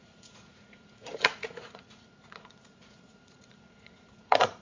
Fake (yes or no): yes